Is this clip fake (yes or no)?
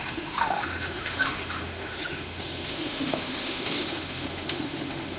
yes